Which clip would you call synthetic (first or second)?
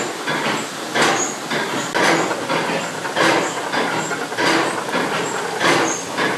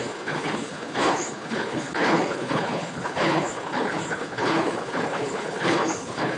second